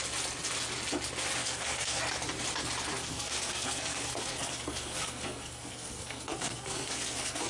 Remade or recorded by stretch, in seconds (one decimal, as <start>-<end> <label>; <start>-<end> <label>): 0.0-1.4 recorded; 1.4-2.0 remade; 2.0-3.0 recorded; 3.0-7.5 remade